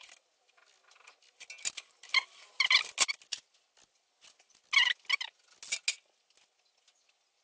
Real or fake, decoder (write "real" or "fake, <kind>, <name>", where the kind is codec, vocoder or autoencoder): real